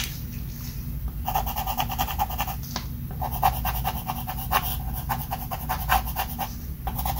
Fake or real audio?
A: real